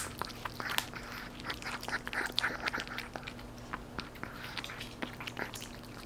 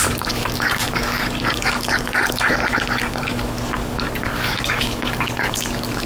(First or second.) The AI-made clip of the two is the second